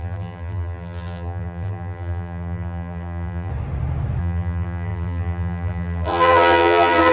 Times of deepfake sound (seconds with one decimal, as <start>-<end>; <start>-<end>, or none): 0.0-3.5; 4.2-7.1